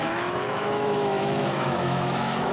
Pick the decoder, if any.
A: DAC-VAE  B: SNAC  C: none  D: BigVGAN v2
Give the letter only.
A